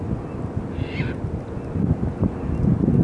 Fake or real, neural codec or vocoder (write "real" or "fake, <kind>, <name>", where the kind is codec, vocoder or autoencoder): real